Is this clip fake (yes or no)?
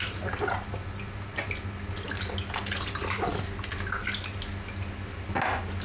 no